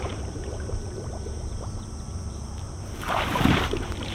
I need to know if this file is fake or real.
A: fake